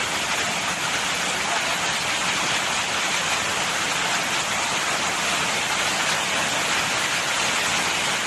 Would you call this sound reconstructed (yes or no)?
no